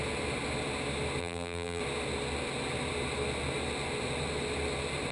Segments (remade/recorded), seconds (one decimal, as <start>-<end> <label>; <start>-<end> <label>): 0.0-1.2 recorded; 1.2-1.8 remade; 1.8-5.1 recorded